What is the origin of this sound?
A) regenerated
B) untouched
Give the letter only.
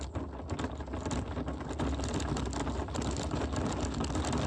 B